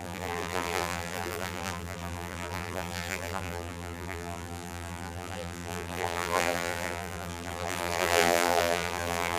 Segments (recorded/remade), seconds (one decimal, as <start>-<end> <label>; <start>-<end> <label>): 0.0-9.4 remade